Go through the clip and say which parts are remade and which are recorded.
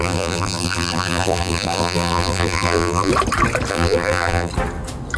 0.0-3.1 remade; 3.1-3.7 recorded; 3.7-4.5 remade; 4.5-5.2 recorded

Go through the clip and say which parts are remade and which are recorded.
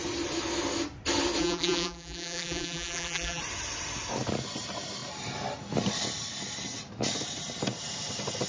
0.0-1.4 recorded; 1.4-3.4 remade; 3.4-8.5 recorded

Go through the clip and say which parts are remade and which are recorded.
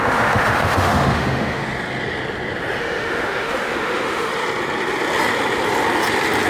0.0-1.6 remade; 1.6-2.8 recorded; 2.8-4.3 remade; 4.3-6.5 recorded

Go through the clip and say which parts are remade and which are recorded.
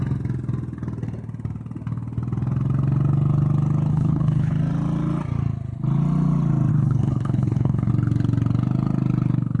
0.0-3.9 recorded; 3.9-4.5 remade; 4.5-6.7 recorded; 6.7-7.9 remade; 7.9-9.6 recorded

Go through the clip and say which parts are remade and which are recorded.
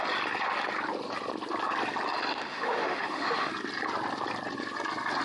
0.0-2.3 recorded; 2.3-3.5 remade; 3.5-5.2 recorded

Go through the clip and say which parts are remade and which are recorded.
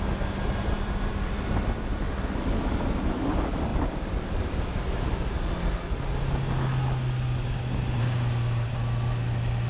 0.0-9.7 recorded